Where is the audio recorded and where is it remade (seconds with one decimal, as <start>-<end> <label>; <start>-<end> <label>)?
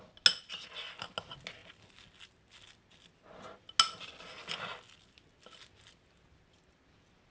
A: 0.0-7.3 recorded